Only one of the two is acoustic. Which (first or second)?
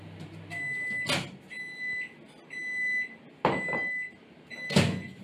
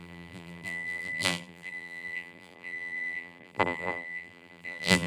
first